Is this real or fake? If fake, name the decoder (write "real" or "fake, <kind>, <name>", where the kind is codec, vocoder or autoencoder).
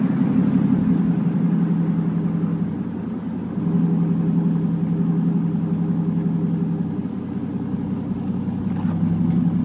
real